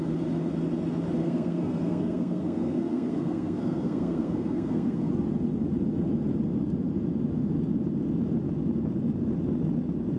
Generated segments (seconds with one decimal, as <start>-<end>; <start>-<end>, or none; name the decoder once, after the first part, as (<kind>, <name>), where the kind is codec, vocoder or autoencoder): 1.2-5.1 (codec, SNAC)